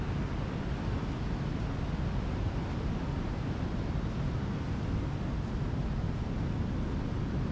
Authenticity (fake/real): real